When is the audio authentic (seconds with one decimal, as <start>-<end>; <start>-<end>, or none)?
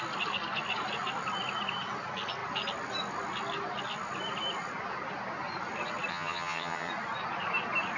0.0-6.1; 6.9-8.0